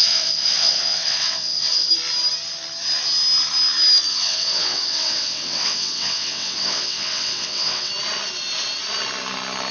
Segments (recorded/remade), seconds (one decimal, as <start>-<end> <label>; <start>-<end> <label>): 0.0-1.9 remade; 1.9-4.1 recorded; 4.1-7.9 remade; 7.9-9.7 recorded